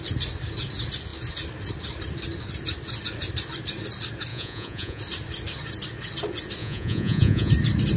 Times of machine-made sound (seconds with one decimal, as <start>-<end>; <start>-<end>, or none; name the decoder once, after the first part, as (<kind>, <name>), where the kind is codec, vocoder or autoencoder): 4.3-5.0 (vocoder, Vocos); 6.6-7.5